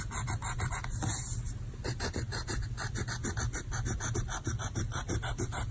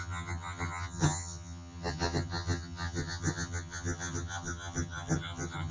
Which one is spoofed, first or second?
second